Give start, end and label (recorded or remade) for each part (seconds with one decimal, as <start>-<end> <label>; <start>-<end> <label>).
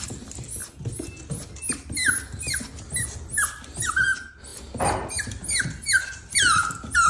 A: 0.0-7.1 recorded